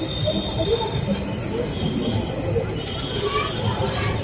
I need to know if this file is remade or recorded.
recorded